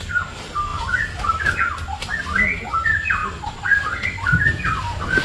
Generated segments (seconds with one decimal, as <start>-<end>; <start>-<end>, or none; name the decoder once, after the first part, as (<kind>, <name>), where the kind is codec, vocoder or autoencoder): 0.7-1.5 (vocoder, BigVGAN v2)